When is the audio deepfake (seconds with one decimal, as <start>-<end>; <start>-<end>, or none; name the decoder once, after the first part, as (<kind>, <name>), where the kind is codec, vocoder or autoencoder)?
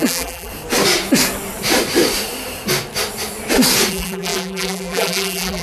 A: 0.0-0.5 (vocoder, BigVGAN v2); 3.9-5.6